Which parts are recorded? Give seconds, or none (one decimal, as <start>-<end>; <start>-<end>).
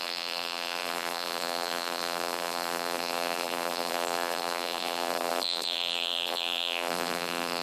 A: none